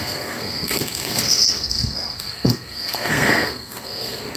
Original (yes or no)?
no